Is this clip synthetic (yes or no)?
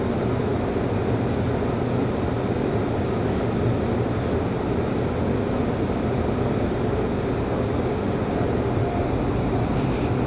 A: no